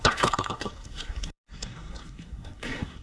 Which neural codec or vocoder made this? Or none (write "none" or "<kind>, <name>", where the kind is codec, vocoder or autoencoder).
codec, SNAC